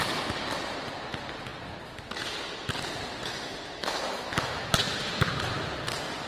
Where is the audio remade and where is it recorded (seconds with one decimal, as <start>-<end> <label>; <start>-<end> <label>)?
0.0-3.8 recorded; 3.8-4.9 remade; 4.9-6.3 recorded